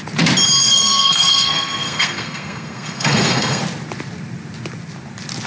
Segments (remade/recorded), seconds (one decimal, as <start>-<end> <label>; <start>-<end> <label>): 0.0-0.6 recorded; 0.6-3.6 remade; 3.6-5.5 recorded